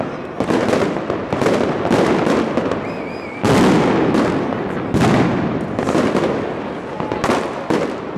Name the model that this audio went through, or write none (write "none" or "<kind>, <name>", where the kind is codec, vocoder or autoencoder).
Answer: none